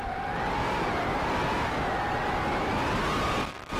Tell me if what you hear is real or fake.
real